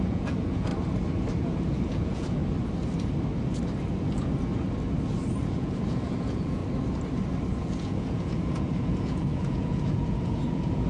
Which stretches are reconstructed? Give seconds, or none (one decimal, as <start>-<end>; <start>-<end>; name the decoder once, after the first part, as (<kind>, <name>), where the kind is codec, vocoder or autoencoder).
0.0-0.7 (vocoder, Vocos); 1.4-2.4; 5.5-6.6; 7.6-10.9